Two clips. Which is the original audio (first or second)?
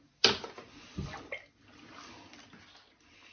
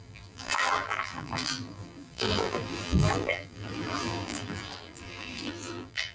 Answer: first